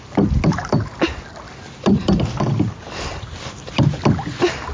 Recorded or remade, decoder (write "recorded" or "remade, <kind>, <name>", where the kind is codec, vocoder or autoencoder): recorded